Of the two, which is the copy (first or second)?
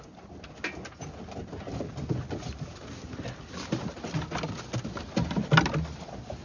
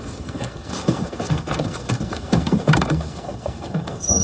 second